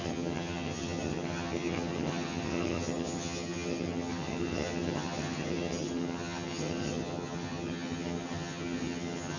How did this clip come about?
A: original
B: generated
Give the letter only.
B